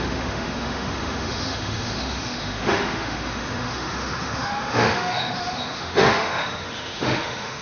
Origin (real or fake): fake